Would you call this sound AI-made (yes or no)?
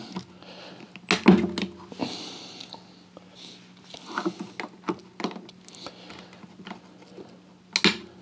no